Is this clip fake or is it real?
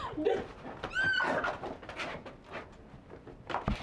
real